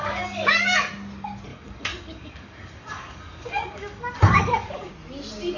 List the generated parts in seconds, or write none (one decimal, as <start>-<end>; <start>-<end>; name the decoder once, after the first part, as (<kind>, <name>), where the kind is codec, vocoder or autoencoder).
0.0-0.9 (codec, DAC); 1.5-4.9